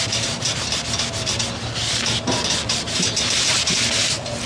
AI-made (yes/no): no